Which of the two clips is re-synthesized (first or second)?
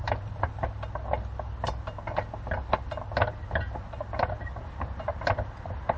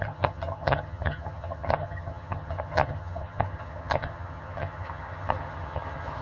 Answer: second